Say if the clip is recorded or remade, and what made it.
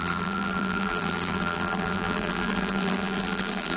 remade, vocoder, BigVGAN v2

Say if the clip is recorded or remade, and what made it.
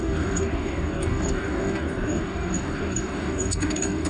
remade, codec, DAC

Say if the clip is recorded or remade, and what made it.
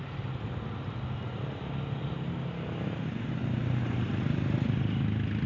recorded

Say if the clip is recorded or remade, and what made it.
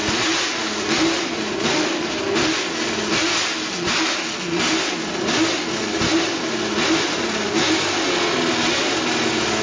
recorded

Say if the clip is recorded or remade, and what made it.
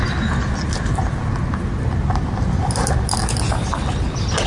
recorded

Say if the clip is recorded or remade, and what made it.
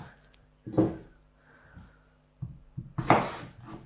recorded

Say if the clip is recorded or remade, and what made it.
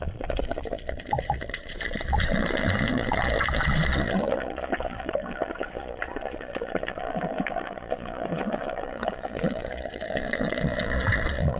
remade, vocoder, Vocos